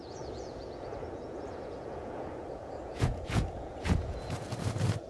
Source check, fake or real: fake